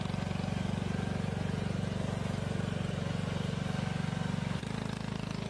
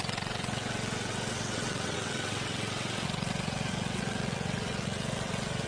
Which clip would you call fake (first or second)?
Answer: second